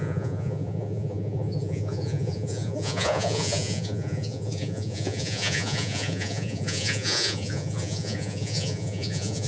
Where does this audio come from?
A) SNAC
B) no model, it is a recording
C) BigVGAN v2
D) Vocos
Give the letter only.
D